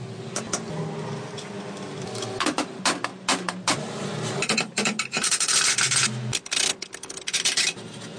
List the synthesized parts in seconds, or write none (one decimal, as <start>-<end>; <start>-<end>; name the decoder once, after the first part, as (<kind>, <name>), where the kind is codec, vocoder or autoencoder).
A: 3.1-5.8 (vocoder, BigVGAN v2)